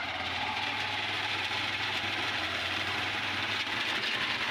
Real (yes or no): no